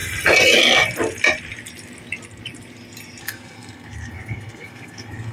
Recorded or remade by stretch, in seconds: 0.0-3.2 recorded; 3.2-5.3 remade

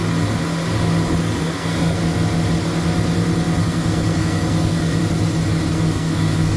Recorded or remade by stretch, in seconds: 0.0-1.2 recorded; 1.2-2.0 remade; 2.0-3.6 recorded; 3.6-5.0 remade; 5.0-5.7 recorded; 5.7-6.6 remade

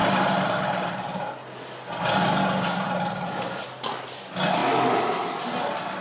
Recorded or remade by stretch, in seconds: 0.0-6.0 recorded

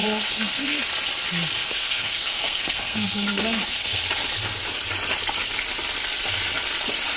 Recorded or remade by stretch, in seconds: 0.0-0.8 remade; 0.8-1.6 recorded; 1.6-4.0 remade; 4.0-7.2 recorded

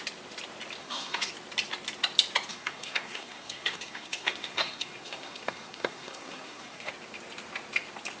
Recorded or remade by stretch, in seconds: 0.0-0.8 recorded; 0.8-1.3 remade; 1.3-2.5 recorded; 2.5-6.9 remade; 6.9-8.2 recorded

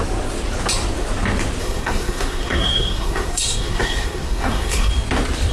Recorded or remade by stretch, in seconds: 0.0-1.6 recorded; 1.6-4.9 remade; 4.9-5.5 recorded

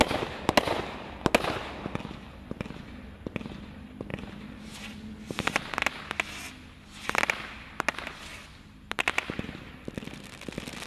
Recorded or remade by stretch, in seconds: 0.0-10.9 recorded

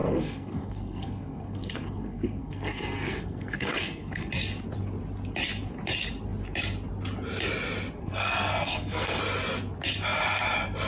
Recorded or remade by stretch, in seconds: 0.0-4.3 remade; 4.3-8.0 recorded; 8.0-9.2 remade; 9.2-10.9 recorded